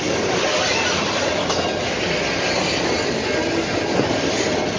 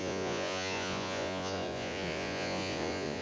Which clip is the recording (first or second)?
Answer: first